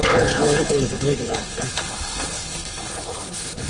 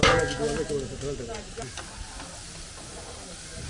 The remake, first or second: first